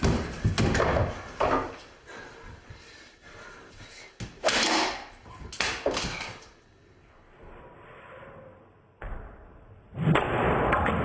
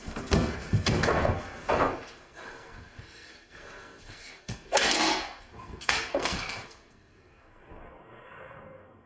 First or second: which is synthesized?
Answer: second